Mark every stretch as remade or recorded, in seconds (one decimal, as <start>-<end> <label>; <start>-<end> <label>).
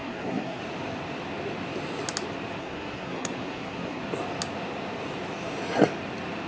0.0-0.6 remade; 0.6-2.6 recorded; 2.6-4.0 remade; 4.0-6.5 recorded